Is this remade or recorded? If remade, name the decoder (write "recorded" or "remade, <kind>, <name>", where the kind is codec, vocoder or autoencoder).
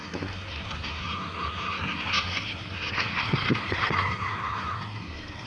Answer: remade, codec, SNAC